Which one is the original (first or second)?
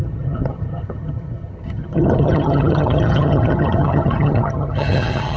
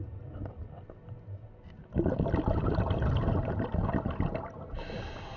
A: second